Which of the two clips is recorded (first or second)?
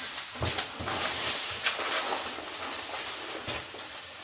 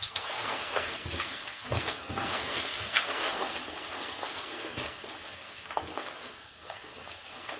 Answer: first